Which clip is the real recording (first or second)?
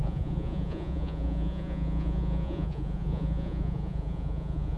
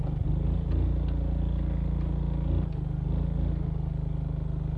second